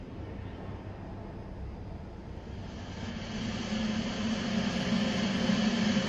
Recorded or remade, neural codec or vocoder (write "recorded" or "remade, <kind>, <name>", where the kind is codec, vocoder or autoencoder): recorded